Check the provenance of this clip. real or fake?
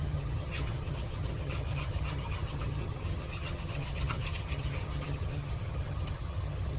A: fake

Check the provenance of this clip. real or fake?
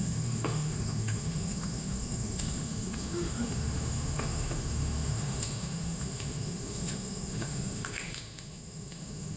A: fake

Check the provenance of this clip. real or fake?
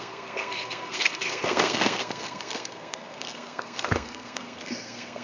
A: fake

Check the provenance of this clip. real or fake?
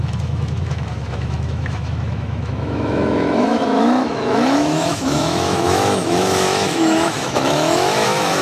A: fake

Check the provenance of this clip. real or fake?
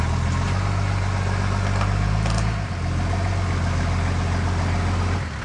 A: real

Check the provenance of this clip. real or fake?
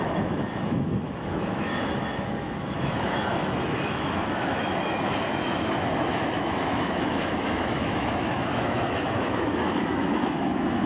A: fake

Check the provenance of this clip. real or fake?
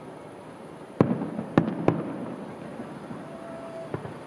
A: real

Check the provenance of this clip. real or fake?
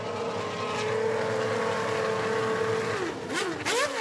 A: real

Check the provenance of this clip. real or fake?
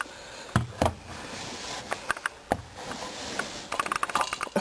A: real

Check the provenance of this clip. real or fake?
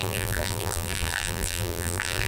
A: fake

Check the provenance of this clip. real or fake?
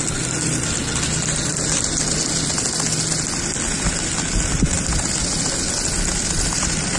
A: real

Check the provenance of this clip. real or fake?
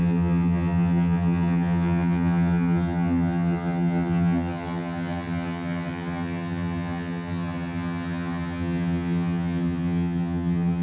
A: fake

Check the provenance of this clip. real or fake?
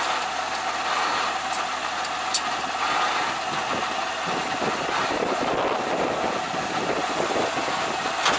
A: real